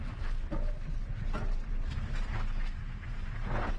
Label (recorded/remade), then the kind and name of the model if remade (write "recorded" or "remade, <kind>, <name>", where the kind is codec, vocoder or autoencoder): recorded